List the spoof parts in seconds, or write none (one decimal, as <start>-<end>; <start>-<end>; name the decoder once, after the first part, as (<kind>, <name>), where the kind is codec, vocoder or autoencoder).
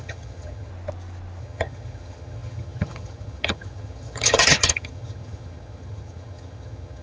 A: 0.0-0.7 (vocoder, HiFi-GAN); 1.4-7.0